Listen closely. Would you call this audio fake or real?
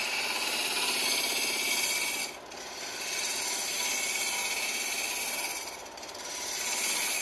fake